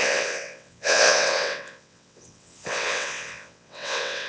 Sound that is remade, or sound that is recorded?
remade